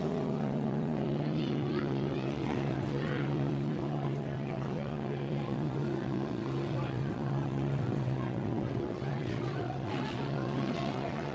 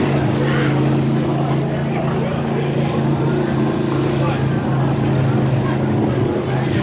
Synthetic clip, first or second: first